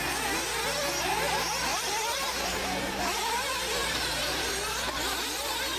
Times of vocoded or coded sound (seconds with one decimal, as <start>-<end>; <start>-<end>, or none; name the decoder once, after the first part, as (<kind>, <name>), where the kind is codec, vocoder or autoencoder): 1.7-3.0 (vocoder, BigVGAN v2); 3.8-4.5